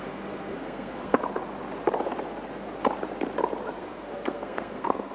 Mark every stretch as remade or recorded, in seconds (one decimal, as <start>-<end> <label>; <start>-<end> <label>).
0.0-1.2 remade; 1.2-3.8 recorded; 3.8-5.1 remade